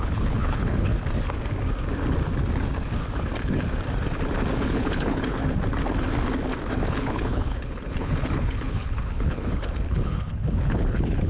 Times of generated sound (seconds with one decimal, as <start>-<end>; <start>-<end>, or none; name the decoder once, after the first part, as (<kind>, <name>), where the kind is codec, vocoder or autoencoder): 0.0-0.9 (codec, HILCodec); 4.7-5.4; 6.9-11.3